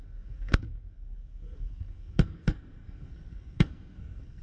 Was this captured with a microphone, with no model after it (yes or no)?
no